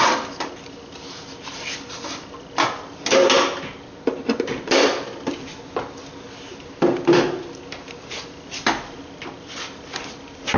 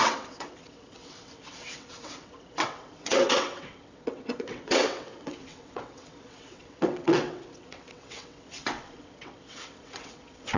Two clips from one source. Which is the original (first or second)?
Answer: first